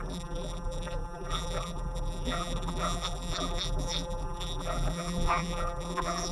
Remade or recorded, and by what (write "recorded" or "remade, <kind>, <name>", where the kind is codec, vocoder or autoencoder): remade, vocoder, BigVGAN v2